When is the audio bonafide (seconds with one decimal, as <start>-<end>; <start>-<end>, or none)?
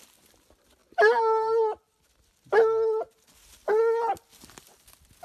0.0-5.2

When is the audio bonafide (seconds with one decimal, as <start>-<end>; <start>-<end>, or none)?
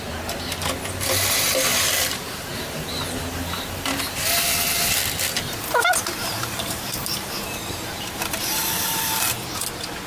0.0-1.7; 3.2-6.2; 9.1-10.1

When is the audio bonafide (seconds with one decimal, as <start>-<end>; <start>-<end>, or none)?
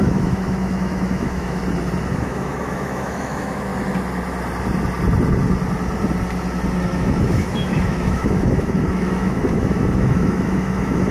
1.6-2.1; 3.7-6.8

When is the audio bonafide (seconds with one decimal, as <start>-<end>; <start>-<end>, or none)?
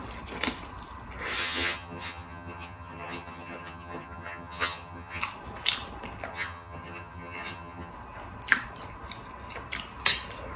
0.0-1.4; 5.2-6.3; 7.9-10.6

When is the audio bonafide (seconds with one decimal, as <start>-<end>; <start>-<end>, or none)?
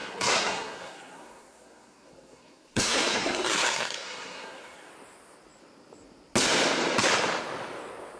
4.9-8.2